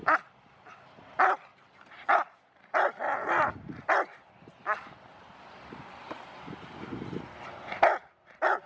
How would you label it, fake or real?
real